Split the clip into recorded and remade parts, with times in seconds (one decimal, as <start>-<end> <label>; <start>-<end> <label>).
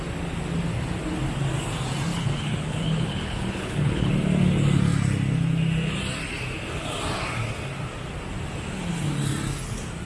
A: 0.0-2.1 recorded; 2.1-4.1 remade; 4.1-10.1 recorded